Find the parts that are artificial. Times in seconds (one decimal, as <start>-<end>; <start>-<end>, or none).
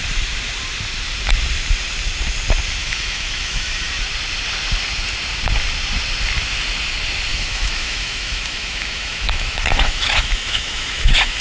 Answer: 2.8-3.9; 7.3-11.4